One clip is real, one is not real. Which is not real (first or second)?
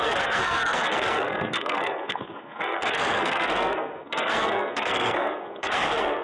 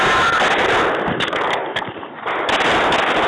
first